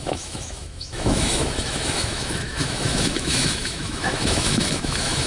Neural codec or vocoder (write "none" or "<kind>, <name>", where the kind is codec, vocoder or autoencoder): autoencoder, DAC-VAE